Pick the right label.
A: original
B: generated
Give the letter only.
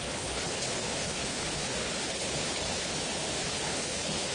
B